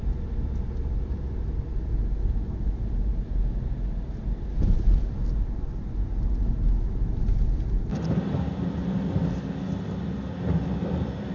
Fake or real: real